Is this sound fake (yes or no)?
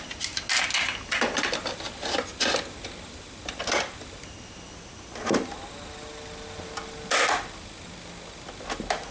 no